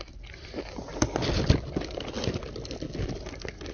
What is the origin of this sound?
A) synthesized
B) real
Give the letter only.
B